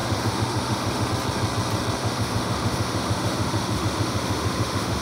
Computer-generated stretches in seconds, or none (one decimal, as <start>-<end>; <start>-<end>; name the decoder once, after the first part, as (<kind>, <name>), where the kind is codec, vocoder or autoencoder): 0.0-1.1 (autoencoder, DAC-VAE); 2.0-5.0